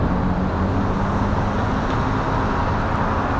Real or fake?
real